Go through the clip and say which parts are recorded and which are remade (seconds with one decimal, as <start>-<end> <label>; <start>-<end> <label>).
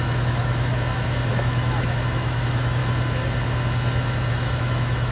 0.0-0.7 remade; 0.7-1.3 recorded; 1.3-2.8 remade; 2.8-4.3 recorded; 4.3-5.1 remade